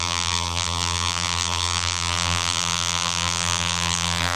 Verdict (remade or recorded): remade